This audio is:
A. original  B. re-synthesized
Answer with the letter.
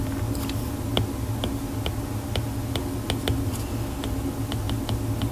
A